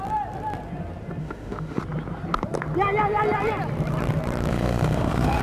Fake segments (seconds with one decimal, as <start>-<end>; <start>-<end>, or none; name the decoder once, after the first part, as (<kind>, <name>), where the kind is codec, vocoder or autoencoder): 1.2-1.8 (autoencoder, DAC-VAE); 4.5-5.4